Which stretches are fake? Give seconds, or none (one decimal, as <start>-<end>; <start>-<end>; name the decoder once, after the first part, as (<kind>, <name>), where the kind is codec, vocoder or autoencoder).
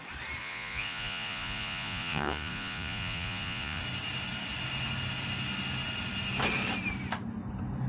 0.4-3.8 (vocoder, Vocos)